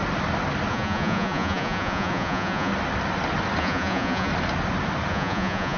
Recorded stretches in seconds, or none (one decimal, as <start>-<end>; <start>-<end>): 0.0-0.7; 2.7-3.6; 4.3-5.1